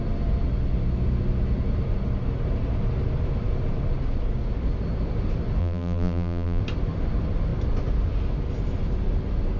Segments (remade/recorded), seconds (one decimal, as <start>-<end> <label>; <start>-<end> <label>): 0.0-5.6 recorded; 5.6-6.6 remade; 6.6-9.6 recorded